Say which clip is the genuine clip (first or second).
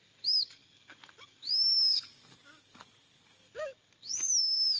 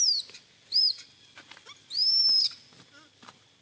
second